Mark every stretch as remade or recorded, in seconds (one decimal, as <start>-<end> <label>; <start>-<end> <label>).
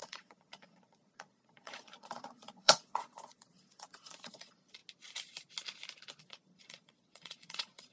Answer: 0.0-4.8 remade; 4.8-6.2 recorded; 6.2-7.9 remade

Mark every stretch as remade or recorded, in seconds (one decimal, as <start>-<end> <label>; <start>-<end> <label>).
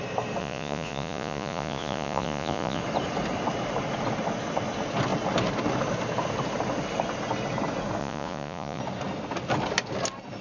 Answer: 0.0-0.4 recorded; 0.4-2.8 remade; 2.8-8.0 recorded; 8.0-8.8 remade; 8.8-10.4 recorded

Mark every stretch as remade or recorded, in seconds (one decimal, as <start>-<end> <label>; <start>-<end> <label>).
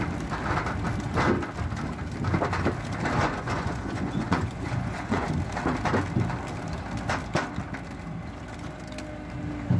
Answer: 0.0-3.2 recorded; 3.2-5.3 remade; 5.3-9.8 recorded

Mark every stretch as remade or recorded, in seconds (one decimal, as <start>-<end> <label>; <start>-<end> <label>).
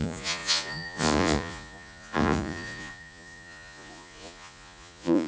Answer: 0.0-5.3 remade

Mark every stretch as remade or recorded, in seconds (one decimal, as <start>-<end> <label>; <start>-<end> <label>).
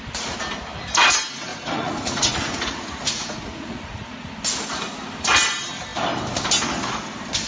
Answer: 0.0-1.5 recorded; 1.5-4.3 remade; 4.3-7.5 recorded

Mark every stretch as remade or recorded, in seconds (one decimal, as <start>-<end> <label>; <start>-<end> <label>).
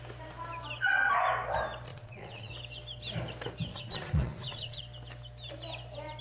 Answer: 0.0-1.9 recorded; 1.9-2.5 remade; 2.5-3.7 recorded; 3.7-4.8 remade; 4.8-6.2 recorded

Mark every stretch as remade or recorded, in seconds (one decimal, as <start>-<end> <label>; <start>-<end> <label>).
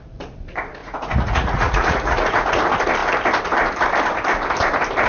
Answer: 0.0-0.8 recorded; 0.8-2.6 remade; 2.6-5.1 recorded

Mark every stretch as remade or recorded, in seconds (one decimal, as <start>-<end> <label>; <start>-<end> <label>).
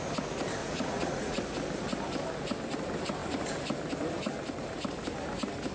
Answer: 0.0-0.6 recorded; 0.6-1.4 remade; 1.4-5.7 recorded